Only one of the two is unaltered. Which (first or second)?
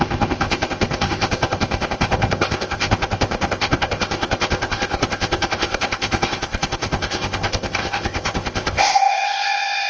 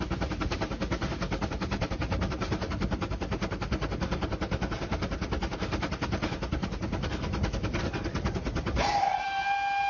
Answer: second